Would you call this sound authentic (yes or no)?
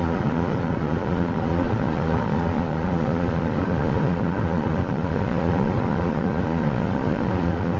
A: no